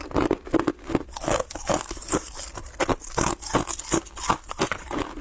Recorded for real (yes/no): yes